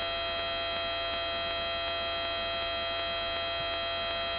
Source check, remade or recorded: recorded